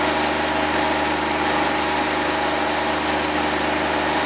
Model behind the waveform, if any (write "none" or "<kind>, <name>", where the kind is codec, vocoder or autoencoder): none